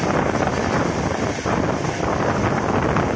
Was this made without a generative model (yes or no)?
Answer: yes